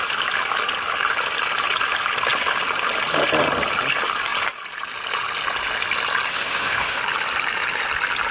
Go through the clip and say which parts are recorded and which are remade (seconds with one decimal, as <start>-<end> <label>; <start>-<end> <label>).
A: 0.0-6.3 recorded; 6.3-7.0 remade; 7.0-8.3 recorded